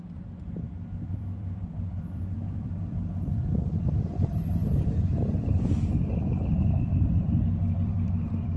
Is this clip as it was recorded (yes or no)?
no